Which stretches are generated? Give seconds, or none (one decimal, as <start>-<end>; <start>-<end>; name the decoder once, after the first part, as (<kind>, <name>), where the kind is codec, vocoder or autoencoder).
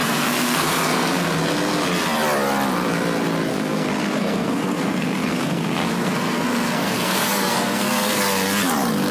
0.0-1.3 (codec, SNAC); 3.5-8.2